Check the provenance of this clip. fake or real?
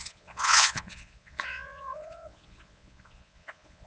fake